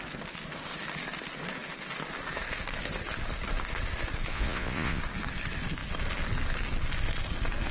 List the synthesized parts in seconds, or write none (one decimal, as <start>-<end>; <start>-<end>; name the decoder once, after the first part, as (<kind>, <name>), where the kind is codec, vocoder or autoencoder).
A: 4.3-5.0 (vocoder, Vocos)